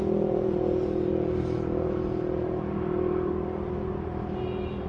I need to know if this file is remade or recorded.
recorded